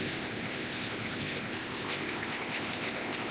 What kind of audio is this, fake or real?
fake